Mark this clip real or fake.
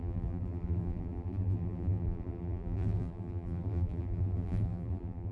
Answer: fake